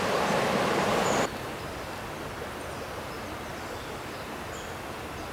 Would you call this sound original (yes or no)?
yes